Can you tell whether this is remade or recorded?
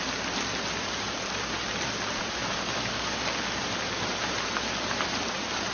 recorded